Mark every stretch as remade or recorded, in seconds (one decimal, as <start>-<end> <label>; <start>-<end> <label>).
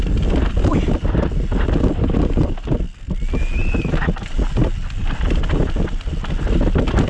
0.0-7.1 recorded